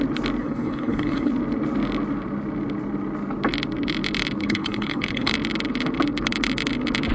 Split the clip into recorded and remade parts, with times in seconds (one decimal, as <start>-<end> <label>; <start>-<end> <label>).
0.0-0.4 recorded; 0.4-1.3 remade; 1.3-4.4 recorded; 4.4-5.3 remade; 5.3-7.1 recorded